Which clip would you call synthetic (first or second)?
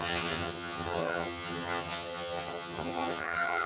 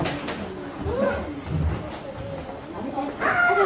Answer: first